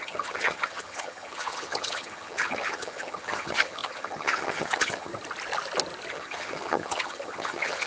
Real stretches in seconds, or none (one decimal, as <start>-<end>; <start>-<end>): 5.1-6.1